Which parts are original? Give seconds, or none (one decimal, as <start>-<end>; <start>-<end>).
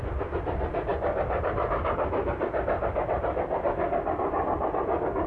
0.0-5.3